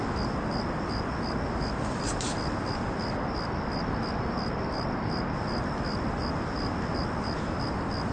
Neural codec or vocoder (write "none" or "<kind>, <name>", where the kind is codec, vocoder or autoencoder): none